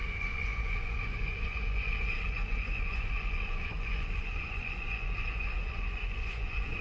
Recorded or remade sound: remade